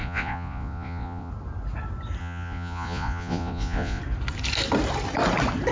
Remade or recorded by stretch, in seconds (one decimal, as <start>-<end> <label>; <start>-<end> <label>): 0.0-1.3 remade; 1.3-2.2 recorded; 2.2-4.0 remade; 4.0-5.7 recorded